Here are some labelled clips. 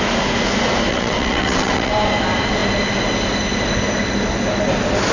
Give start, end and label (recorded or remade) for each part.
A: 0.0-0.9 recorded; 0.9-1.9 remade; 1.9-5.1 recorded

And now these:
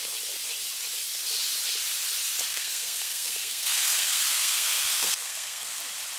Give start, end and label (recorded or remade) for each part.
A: 0.0-2.5 recorded; 2.5-5.8 remade; 5.8-6.2 recorded